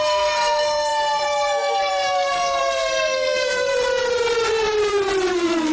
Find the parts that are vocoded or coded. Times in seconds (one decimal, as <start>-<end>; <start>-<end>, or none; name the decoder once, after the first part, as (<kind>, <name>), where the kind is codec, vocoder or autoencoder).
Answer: 0.0-3.7 (codec, SNAC); 5.3-5.7